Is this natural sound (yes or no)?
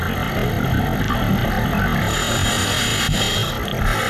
yes